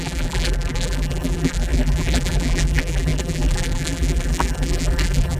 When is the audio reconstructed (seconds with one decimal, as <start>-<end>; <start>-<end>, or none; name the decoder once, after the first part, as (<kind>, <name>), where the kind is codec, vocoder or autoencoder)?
0.0-5.4 (vocoder, BigVGAN v2)